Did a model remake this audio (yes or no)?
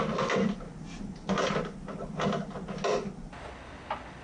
no